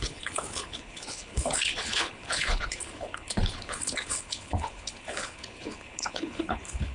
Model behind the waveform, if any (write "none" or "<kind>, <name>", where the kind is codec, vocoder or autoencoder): codec, HILCodec